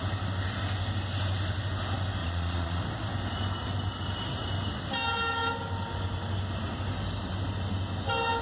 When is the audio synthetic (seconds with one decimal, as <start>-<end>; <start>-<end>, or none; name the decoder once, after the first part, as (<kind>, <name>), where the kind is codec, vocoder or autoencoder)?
2.2-2.8 (vocoder, Vocos)

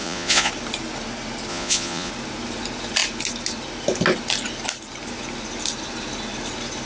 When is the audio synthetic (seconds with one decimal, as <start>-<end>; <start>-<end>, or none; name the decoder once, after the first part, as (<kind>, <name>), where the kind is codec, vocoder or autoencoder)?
0.0-0.5 (vocoder, Vocos); 1.5-2.1

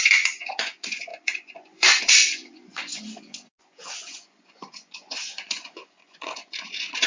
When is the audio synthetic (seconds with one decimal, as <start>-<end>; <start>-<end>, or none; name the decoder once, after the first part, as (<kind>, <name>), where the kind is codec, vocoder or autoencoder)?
0.0-7.1 (vocoder, Vocos)